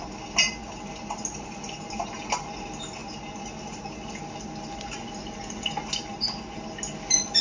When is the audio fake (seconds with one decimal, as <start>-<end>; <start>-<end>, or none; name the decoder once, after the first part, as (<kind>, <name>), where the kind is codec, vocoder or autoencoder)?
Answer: none